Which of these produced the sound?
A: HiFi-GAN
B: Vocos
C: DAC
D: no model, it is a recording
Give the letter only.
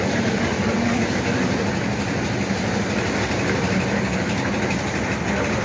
D